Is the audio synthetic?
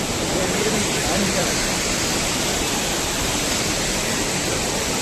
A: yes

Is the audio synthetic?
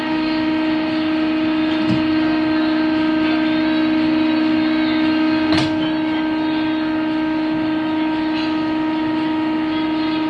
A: no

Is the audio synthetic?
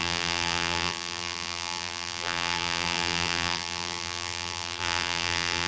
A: yes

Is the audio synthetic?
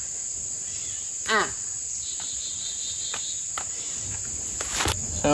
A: no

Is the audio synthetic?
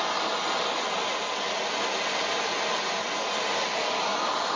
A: no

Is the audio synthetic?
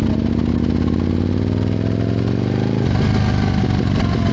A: no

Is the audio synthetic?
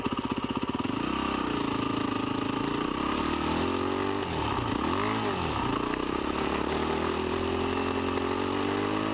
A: no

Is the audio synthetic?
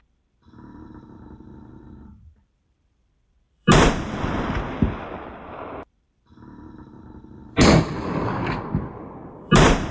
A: yes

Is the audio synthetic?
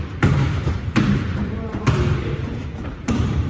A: yes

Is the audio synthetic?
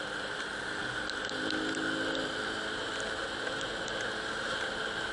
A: no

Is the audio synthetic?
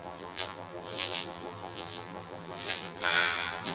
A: yes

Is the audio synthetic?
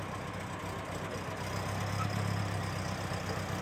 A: no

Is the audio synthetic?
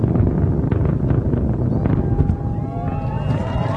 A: no